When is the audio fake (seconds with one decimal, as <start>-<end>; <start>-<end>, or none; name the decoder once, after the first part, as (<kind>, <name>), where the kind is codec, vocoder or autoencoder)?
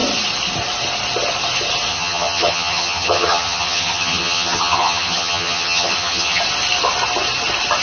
1.9-6.4 (vocoder, HiFi-GAN)